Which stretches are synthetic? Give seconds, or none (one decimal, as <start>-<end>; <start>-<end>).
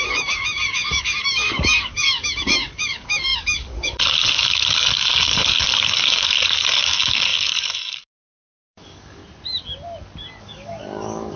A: 0.0-9.2; 10.4-11.4